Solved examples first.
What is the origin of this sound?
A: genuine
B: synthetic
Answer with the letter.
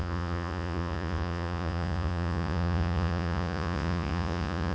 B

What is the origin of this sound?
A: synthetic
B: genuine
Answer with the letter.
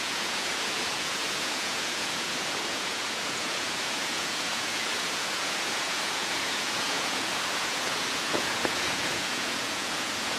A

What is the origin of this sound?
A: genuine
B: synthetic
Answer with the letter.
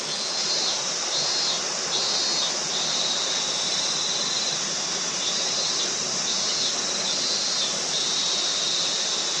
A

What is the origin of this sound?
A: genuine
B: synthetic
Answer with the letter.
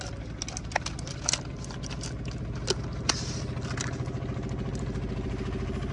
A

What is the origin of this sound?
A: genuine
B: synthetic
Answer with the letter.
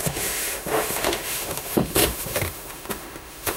B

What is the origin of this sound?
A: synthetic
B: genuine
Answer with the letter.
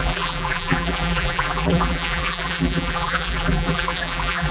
A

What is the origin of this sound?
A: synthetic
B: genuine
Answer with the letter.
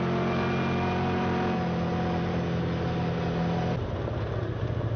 B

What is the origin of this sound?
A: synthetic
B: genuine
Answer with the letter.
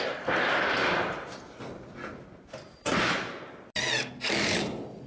B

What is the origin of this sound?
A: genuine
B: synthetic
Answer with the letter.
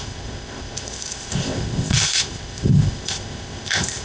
B